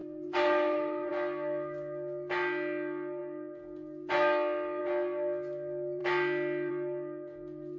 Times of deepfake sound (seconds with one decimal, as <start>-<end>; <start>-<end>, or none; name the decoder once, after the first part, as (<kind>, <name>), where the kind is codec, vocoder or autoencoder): 0.0-1.1 (codec, SNAC)